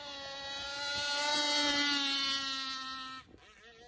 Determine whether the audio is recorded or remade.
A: recorded